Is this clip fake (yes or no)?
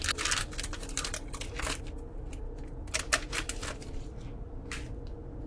no